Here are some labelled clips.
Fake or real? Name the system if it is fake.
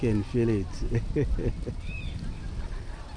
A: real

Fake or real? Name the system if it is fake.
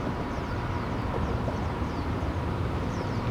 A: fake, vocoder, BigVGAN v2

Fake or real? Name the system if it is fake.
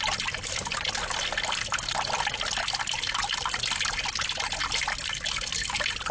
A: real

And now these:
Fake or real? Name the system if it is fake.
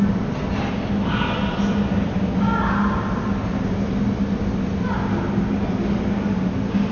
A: real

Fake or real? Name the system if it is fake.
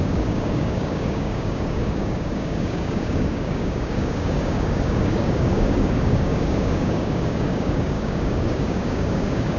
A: fake, codec, DAC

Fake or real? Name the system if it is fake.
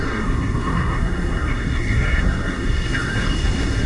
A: fake, codec, SNAC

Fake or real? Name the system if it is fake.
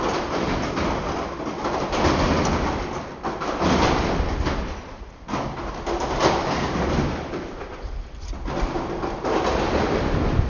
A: real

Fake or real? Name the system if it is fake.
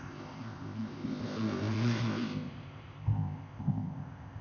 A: fake, codec, ZipCodec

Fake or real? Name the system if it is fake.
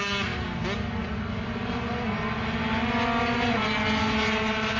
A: real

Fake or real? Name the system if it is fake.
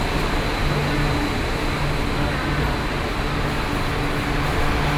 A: real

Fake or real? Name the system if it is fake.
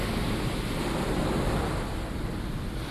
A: real